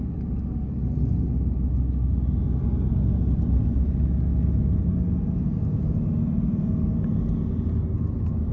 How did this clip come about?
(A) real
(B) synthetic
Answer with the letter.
A